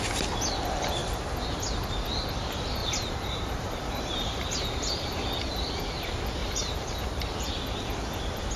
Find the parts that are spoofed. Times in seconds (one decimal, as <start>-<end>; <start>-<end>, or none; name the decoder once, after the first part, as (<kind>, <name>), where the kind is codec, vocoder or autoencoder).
2.8-5.2 (vocoder, BigVGAN v2); 6.4-7.2